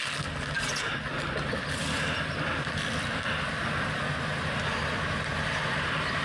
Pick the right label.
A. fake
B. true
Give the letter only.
B